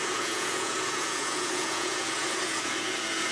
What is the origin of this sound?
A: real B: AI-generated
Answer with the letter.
B